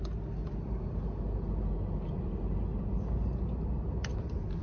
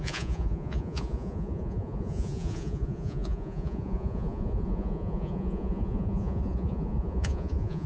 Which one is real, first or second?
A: first